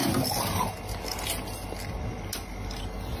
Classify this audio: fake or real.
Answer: real